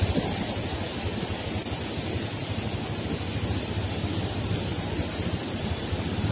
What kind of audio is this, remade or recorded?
recorded